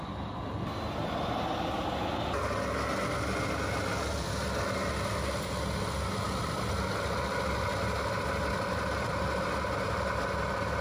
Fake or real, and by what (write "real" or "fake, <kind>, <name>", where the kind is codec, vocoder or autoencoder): real